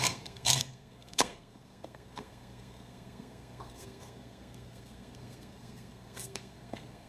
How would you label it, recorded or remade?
remade